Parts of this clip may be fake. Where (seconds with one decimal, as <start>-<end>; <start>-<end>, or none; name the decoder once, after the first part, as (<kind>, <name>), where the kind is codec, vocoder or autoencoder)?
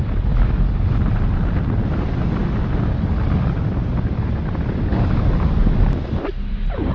none